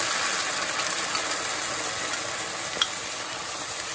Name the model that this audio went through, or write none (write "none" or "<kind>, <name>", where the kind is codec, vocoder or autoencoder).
none